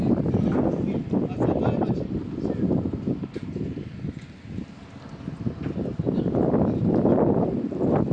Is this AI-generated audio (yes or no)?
no